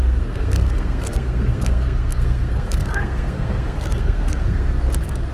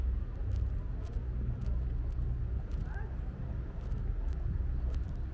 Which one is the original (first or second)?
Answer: second